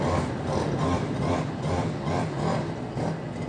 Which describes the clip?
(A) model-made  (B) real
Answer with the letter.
B